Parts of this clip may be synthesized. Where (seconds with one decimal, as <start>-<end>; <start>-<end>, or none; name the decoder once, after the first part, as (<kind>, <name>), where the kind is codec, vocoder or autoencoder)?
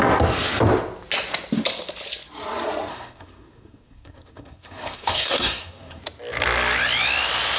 2.9-6.0 (codec, SNAC)